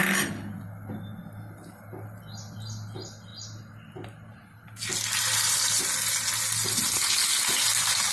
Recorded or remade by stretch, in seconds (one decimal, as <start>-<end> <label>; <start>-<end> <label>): 0.0-6.9 recorded; 6.9-7.4 remade; 7.4-8.1 recorded